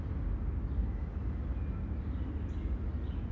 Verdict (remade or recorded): recorded